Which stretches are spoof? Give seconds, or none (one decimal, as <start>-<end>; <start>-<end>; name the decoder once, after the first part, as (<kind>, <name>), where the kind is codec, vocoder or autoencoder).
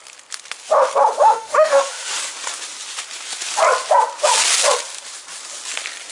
1.2-2.1 (autoencoder, DAC-VAE)